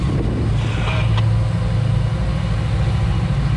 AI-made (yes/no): no